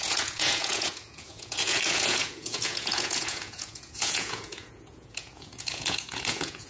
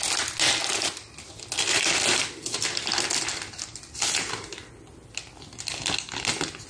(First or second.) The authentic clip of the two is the second